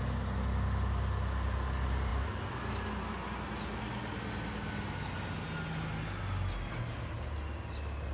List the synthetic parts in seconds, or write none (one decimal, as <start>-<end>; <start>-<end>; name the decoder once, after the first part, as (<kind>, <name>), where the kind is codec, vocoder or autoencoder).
none